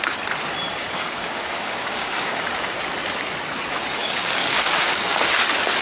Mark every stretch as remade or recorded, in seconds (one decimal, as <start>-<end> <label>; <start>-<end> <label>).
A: 0.0-0.8 recorded; 0.8-2.7 remade; 2.7-4.0 recorded; 4.0-5.2 remade; 5.2-5.8 recorded